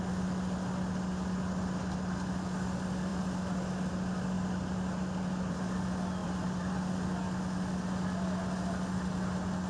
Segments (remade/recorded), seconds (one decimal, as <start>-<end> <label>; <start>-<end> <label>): 0.0-6.2 recorded; 6.2-6.9 remade; 6.9-9.7 recorded